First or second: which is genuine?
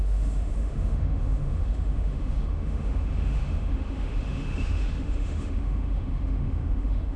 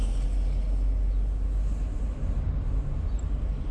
second